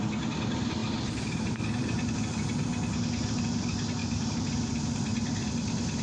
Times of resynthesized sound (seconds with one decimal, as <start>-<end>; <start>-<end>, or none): 0.8-1.6; 4.0-4.7